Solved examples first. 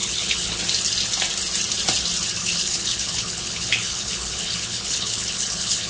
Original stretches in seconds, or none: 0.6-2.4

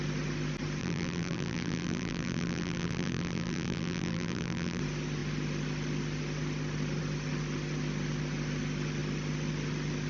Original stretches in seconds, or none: 0.0-0.8; 4.8-10.1